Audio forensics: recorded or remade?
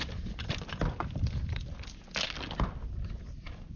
recorded